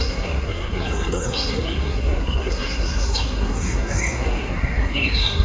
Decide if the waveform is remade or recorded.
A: remade